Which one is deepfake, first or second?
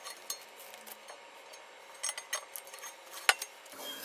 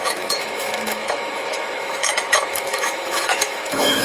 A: second